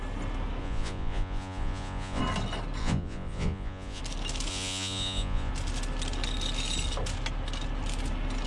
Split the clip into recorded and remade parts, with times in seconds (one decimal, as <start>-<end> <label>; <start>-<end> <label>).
0.0-0.6 recorded; 0.6-2.2 remade; 2.2-2.8 recorded; 2.8-4.0 remade; 4.0-4.5 recorded; 4.5-5.5 remade; 5.5-8.5 recorded